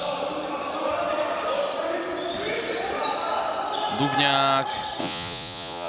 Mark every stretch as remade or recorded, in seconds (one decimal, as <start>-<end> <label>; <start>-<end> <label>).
0.0-5.0 recorded; 5.0-5.9 remade